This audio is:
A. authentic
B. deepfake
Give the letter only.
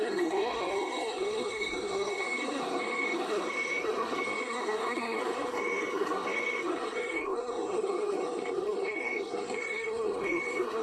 B